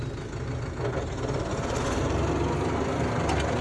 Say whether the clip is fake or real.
real